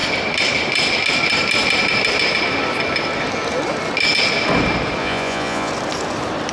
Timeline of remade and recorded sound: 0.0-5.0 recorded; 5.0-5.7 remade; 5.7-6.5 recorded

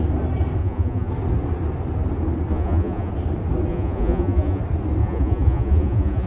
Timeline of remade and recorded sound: 0.0-0.6 recorded; 0.6-1.1 remade; 1.1-2.5 recorded; 2.5-3.1 remade; 3.1-3.7 recorded; 3.7-4.6 remade; 4.6-5.0 recorded; 5.0-6.3 remade

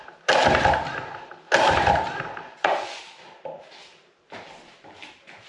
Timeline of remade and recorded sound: 0.0-2.4 recorded; 2.4-3.0 remade; 3.0-5.5 recorded